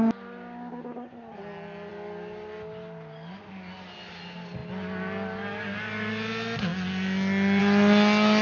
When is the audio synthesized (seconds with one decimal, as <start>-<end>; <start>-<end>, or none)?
none